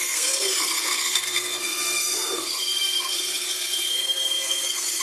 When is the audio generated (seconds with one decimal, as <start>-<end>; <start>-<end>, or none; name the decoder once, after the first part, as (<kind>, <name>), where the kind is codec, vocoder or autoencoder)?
0.0-5.0 (codec, SNAC)